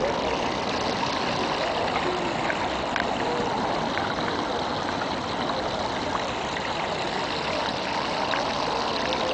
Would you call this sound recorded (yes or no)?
yes